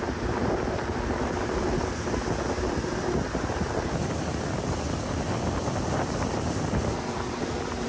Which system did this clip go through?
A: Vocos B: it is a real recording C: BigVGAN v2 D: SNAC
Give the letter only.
B